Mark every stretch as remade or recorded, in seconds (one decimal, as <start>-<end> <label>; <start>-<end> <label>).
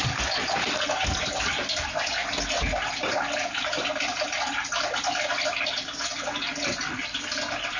0.0-7.8 recorded